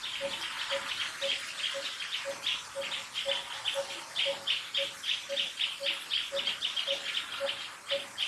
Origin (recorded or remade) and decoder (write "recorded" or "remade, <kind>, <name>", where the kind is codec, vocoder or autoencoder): recorded